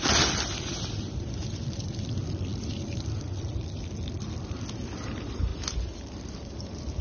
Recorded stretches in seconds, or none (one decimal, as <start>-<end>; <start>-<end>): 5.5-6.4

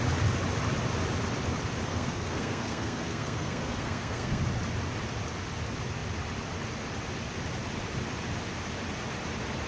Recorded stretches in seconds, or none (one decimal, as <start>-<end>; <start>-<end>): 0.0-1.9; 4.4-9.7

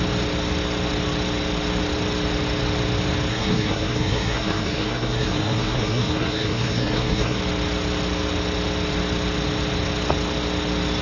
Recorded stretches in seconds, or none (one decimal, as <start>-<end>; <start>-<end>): 0.0-3.3; 7.4-11.0

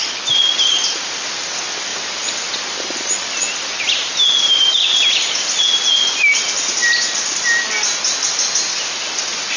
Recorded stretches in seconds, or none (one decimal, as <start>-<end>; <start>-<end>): 0.0-9.6

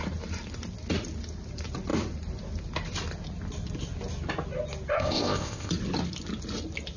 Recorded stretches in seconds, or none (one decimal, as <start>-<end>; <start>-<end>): 0.0-4.9; 5.7-7.0

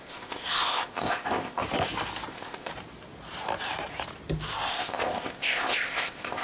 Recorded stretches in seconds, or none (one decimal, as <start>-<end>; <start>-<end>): 1.6-2.3; 2.7-4.7

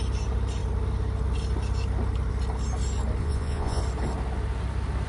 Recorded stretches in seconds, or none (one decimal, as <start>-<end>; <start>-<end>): 0.0-3.2; 3.8-5.1

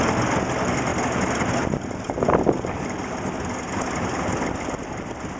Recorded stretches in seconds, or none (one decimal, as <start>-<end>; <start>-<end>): 0.0-5.4